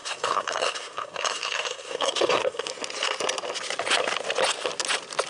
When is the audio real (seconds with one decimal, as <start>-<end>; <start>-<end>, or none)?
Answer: 2.7-5.3